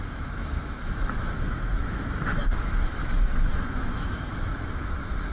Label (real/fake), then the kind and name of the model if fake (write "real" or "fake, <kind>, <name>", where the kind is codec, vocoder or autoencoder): fake, autoencoder, DAC-VAE